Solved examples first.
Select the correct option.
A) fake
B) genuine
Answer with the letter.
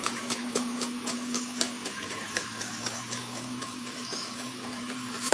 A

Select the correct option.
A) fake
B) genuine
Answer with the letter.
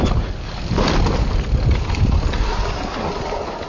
B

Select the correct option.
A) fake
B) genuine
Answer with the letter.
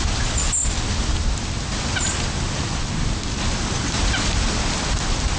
B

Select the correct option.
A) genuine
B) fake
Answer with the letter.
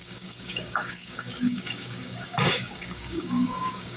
B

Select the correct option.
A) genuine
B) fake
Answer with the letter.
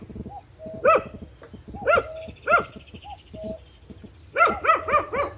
A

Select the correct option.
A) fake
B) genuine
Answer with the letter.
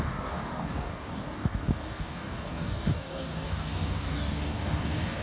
A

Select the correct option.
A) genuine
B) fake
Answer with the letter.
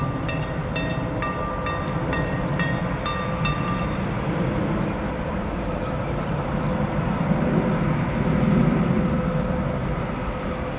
A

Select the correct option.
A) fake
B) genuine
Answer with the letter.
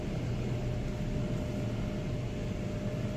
B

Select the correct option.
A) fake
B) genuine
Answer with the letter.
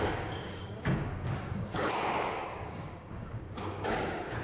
A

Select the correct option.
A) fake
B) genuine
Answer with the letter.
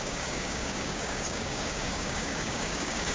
A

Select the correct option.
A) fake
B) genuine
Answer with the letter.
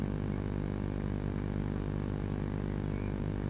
B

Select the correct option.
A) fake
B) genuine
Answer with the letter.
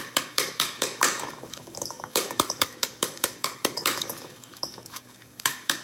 A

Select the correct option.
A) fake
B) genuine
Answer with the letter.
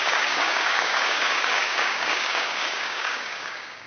A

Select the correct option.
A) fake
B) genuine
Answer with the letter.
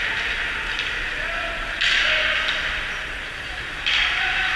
B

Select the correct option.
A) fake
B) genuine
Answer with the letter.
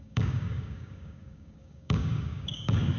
A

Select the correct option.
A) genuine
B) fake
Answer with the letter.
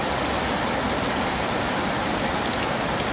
A